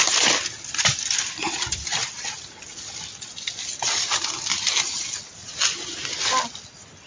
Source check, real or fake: real